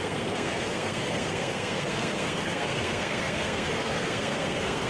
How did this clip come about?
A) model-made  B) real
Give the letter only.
A